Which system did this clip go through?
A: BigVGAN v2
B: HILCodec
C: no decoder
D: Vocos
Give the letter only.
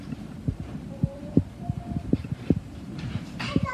A